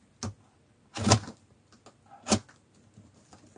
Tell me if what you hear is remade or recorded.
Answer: recorded